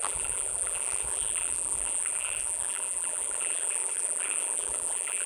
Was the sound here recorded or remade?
remade